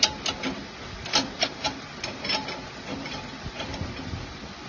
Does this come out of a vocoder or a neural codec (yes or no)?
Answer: no